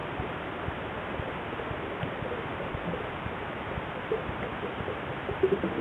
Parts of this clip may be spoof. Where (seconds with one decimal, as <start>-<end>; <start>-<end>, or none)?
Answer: 0.0-0.6; 2.5-5.1